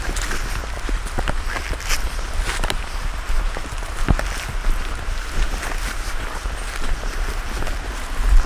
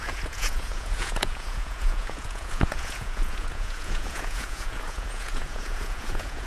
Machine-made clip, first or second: second